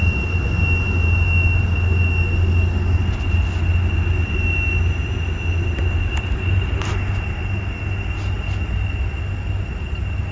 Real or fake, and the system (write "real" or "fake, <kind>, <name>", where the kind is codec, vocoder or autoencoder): real